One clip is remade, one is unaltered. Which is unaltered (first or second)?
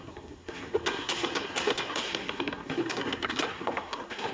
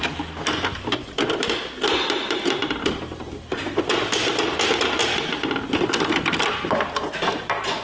second